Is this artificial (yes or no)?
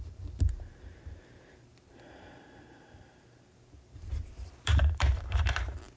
yes